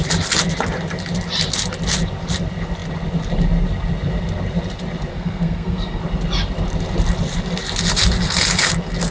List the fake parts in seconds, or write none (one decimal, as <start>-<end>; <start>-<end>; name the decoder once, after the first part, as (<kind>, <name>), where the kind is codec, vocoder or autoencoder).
5.1-6.0 (codec, SNAC)